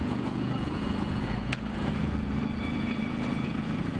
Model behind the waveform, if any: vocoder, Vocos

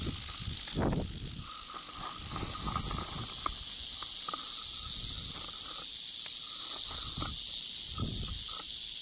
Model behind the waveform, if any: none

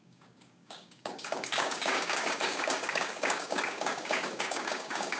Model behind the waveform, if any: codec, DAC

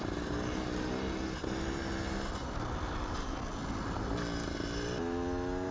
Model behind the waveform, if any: none